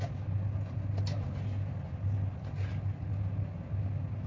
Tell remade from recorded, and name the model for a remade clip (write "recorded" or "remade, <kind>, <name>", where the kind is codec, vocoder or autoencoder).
recorded